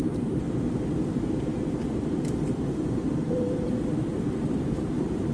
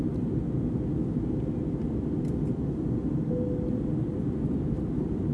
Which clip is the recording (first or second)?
second